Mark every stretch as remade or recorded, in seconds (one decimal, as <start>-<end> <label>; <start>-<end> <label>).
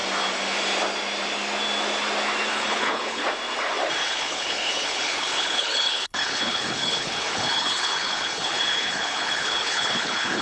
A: 0.0-2.5 recorded; 2.5-3.2 remade; 3.2-4.0 recorded; 4.0-10.4 remade